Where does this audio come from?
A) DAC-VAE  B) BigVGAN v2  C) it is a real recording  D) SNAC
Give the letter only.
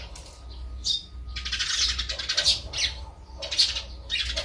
C